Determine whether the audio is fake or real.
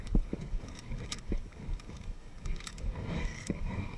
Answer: fake